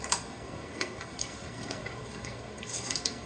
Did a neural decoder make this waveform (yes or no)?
yes